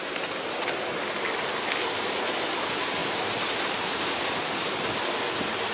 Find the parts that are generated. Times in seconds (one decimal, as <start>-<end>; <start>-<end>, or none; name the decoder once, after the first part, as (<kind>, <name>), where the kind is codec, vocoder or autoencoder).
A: none